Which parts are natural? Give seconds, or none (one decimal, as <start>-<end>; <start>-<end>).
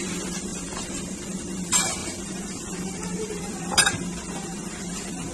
0.0-0.5; 1.4-2.0; 3.9-5.3